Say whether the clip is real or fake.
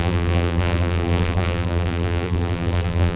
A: fake